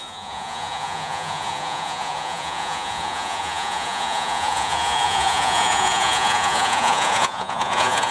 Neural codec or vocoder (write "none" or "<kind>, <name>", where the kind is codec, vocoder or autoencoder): vocoder, Vocos